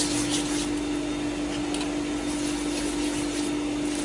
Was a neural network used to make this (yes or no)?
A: no